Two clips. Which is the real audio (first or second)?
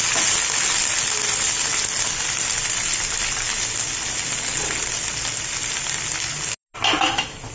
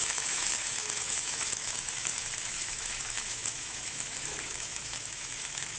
first